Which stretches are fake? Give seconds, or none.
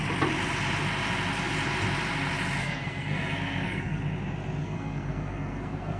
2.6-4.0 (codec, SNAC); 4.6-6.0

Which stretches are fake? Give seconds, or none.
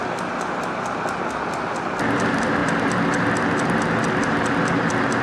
none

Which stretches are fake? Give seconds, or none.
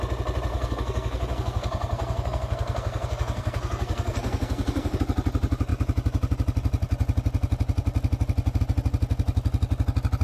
0.5-5.0 (codec, SNAC)